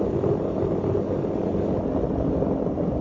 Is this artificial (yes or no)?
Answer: no